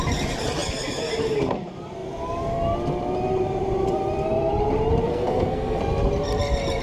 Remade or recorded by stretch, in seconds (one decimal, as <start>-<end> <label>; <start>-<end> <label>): 0.0-5.1 recorded; 5.1-5.8 remade; 5.8-6.8 recorded